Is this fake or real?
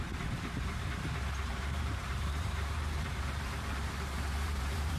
fake